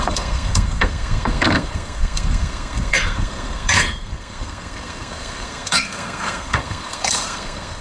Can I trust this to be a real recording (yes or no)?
no